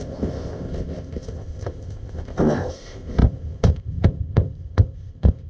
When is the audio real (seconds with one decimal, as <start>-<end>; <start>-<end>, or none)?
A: none